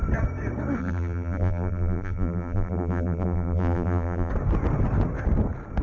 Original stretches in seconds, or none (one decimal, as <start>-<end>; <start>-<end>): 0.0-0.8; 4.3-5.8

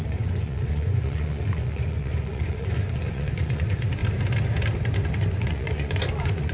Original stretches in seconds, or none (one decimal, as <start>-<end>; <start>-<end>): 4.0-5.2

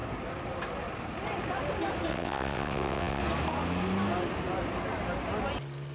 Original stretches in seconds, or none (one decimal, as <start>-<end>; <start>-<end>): 0.0-2.1; 3.2-5.9

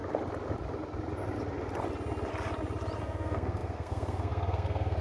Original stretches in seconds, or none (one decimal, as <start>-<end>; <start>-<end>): 0.0-3.0

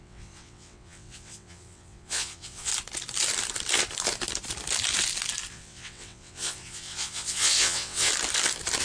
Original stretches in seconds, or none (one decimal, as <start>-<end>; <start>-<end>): 2.7-5.5; 8.1-8.8

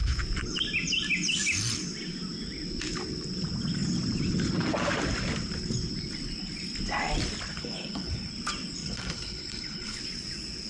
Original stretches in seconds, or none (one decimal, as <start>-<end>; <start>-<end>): 0.0-7.5; 8.3-8.8; 10.0-10.7

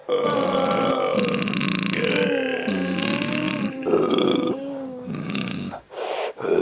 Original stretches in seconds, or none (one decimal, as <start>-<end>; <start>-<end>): 0.0-3.0; 3.5-4.1